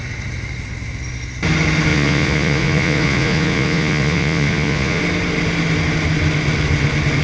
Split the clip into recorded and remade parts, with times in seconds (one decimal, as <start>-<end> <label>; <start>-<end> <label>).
0.0-1.9 recorded; 1.9-5.0 remade; 5.0-7.2 recorded